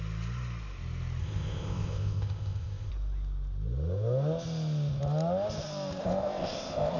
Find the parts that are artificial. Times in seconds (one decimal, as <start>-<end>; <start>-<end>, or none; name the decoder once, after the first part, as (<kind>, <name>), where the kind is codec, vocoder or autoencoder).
1.2-2.9 (codec, ZipCodec); 6.0-7.0